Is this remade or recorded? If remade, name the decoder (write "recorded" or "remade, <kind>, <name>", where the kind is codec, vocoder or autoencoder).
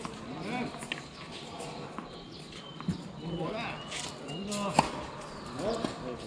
recorded